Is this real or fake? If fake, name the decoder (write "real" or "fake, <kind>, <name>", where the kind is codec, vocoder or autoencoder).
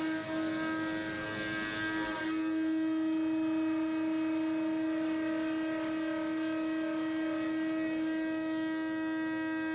real